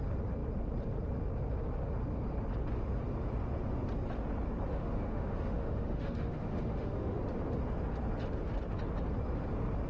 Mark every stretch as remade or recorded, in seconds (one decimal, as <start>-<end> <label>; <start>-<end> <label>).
0.0-4.7 recorded; 4.7-7.2 remade; 7.2-9.9 recorded